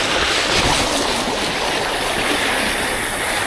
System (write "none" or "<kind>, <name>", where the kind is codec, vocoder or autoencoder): none